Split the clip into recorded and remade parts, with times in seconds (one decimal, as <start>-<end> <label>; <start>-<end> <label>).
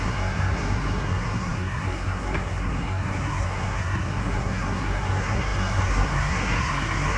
0.0-7.2 remade